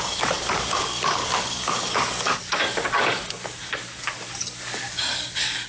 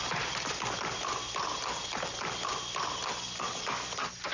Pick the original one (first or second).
second